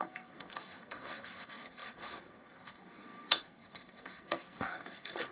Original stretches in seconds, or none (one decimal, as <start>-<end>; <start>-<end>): none